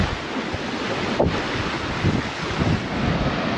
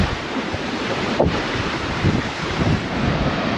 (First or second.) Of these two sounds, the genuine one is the first